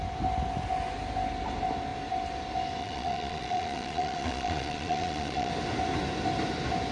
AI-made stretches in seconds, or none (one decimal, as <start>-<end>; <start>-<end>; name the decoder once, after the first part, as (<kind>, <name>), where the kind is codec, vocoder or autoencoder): 2.8-5.5 (vocoder, Vocos)